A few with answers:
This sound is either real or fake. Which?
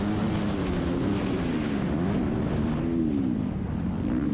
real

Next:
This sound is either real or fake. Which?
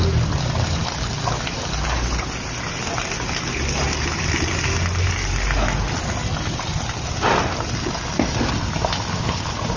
real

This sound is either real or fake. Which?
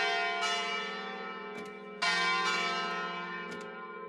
real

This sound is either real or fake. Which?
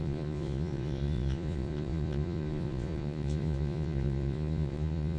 fake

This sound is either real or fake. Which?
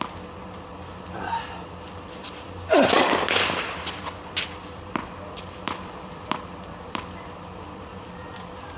fake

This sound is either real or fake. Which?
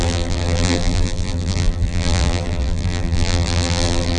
fake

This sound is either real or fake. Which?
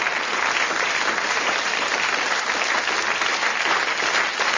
real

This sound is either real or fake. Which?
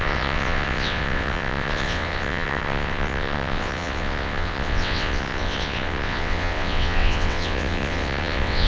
fake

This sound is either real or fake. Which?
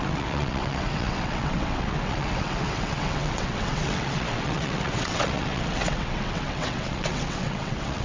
fake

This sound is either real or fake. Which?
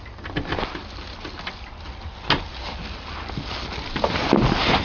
real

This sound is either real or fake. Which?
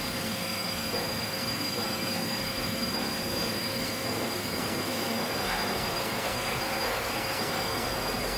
fake